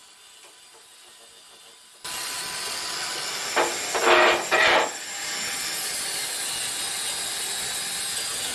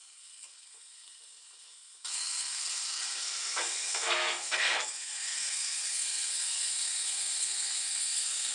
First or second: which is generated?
second